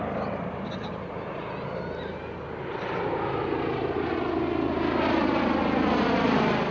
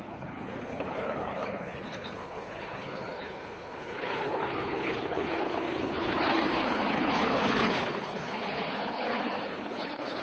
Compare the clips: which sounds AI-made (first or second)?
second